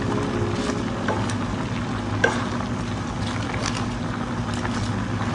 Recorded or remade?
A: recorded